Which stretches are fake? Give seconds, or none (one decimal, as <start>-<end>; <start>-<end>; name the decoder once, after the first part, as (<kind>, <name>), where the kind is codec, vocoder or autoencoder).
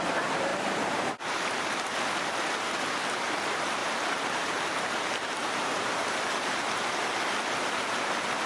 3.8-7.0 (vocoder, BigVGAN v2)